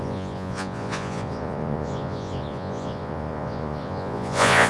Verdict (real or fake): fake